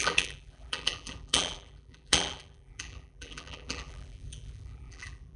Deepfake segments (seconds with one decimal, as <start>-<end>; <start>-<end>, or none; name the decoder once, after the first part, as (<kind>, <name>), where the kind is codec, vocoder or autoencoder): 0.0-5.4 (vocoder, BigVGAN v2)